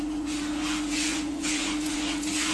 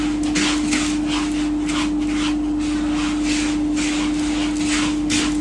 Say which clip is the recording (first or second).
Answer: second